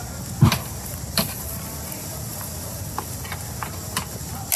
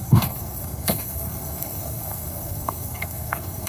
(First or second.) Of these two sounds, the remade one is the second